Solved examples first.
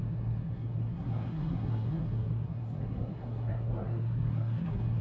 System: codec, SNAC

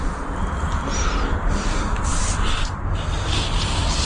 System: none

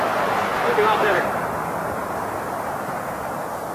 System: vocoder, BigVGAN v2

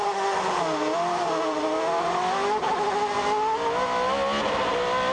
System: none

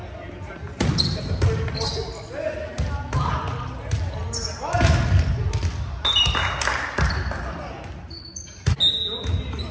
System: none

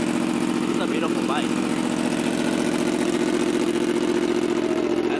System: none